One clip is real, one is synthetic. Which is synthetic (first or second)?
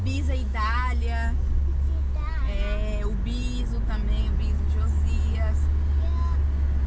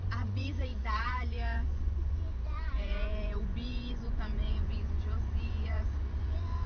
second